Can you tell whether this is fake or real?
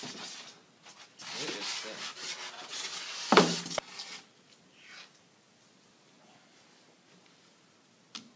real